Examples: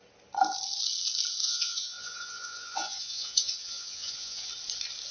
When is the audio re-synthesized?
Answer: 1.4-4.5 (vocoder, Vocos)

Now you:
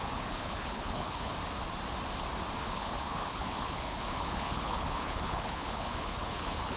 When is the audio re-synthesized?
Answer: 0.0-1.3 (codec, HILCodec); 2.6-6.8